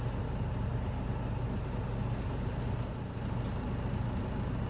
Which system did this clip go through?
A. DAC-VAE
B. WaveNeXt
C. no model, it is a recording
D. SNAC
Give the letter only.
C